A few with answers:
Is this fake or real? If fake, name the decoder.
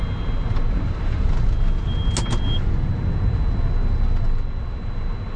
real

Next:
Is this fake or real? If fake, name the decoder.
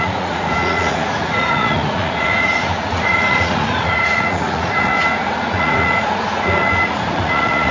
fake, vocoder, Vocos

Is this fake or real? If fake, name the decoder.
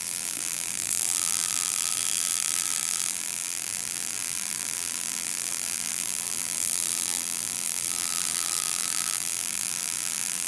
fake, vocoder, BigVGAN v2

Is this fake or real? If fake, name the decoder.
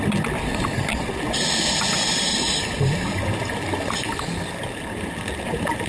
real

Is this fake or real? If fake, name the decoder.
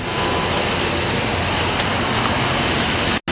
real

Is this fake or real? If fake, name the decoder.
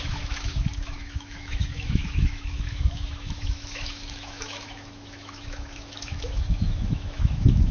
fake, autoencoder, DAC-VAE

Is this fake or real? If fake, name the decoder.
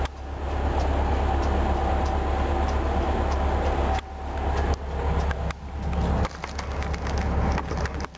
real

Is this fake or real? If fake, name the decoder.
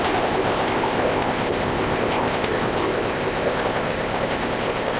fake, codec, ZipCodec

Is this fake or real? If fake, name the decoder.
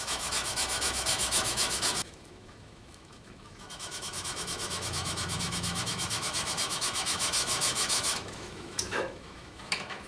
fake, autoencoder, DAC-VAE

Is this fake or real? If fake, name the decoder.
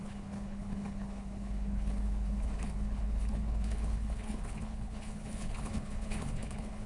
fake, codec, HILCodec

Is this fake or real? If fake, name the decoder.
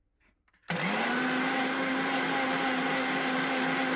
real